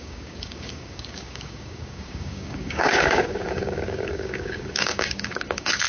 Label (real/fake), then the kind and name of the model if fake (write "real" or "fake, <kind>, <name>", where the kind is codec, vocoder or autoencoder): fake, codec, DAC